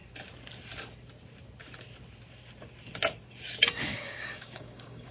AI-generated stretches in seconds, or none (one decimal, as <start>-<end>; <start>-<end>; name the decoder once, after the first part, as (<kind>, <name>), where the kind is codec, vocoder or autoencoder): 3.9-5.1 (codec, DAC)